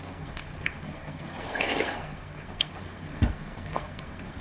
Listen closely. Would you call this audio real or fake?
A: fake